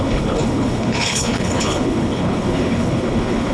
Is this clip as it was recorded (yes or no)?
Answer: no